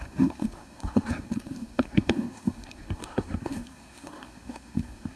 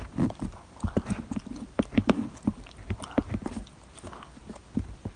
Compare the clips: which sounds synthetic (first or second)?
first